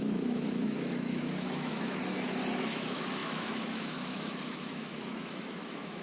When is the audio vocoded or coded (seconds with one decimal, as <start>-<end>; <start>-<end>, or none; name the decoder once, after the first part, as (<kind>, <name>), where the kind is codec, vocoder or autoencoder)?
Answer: 0.0-2.0 (autoencoder, DAC-VAE); 2.6-6.0